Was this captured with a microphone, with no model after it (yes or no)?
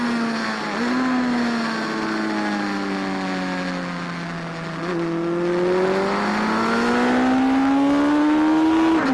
yes